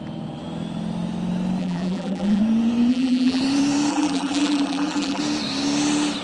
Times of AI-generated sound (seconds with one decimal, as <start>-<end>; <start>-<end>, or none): 1.6-2.4; 2.9-3.4; 3.9-5.2